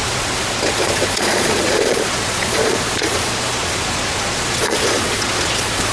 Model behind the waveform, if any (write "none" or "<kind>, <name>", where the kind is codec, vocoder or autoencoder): vocoder, Vocos